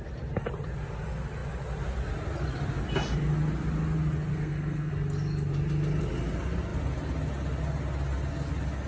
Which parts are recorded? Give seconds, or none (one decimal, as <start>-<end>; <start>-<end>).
0.0-4.3; 4.9-8.9